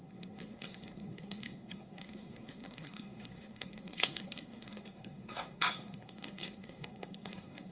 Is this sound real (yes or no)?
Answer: no